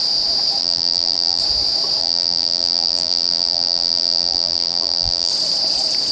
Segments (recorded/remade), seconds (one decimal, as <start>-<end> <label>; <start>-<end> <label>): 0.0-0.6 recorded; 0.6-1.4 remade; 1.4-2.0 recorded; 2.0-5.3 remade; 5.3-6.1 recorded